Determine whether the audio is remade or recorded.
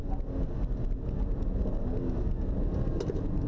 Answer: recorded